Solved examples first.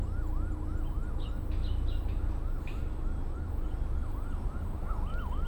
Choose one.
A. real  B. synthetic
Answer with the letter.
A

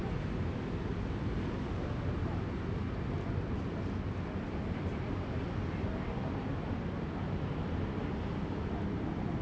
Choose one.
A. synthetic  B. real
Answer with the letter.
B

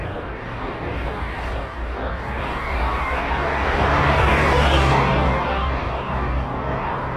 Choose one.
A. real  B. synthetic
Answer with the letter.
B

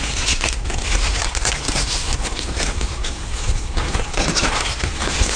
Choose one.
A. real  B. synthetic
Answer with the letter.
B